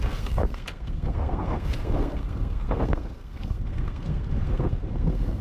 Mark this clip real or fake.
fake